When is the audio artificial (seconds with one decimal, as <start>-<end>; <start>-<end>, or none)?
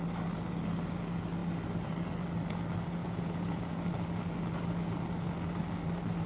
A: 3.0-3.8